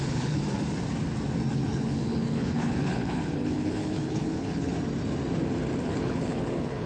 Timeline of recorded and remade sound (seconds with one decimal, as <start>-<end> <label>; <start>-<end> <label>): 0.0-0.4 remade; 0.4-1.5 recorded; 1.5-4.7 remade; 4.7-5.8 recorded; 5.8-6.9 remade

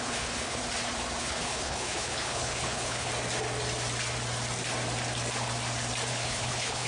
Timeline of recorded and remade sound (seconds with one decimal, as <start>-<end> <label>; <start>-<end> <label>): 0.0-0.6 remade; 0.6-1.2 recorded; 1.2-3.1 remade; 3.1-6.1 recorded; 6.1-6.9 remade

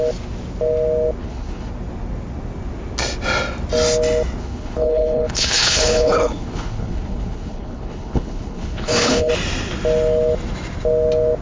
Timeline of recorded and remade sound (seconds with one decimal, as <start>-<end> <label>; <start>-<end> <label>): 0.0-1.2 recorded; 1.2-1.7 remade; 1.7-4.4 recorded; 4.4-9.3 remade; 9.3-11.4 recorded

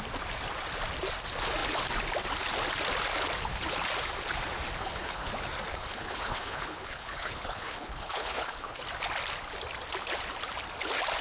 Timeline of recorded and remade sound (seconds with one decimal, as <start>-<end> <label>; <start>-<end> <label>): 0.0-4.8 recorded; 4.8-5.3 remade; 5.3-5.7 recorded; 5.7-8.8 remade; 8.8-11.2 recorded

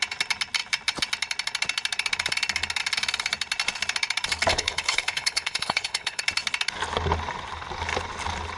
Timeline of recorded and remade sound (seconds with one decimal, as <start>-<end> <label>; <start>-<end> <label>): 0.0-4.5 recorded; 4.5-6.2 remade; 6.2-8.6 recorded

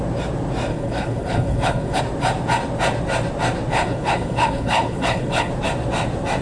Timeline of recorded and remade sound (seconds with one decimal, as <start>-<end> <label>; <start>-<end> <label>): 0.0-0.7 recorded; 0.7-2.0 remade; 2.0-3.7 recorded; 3.7-5.5 remade; 5.5-6.4 recorded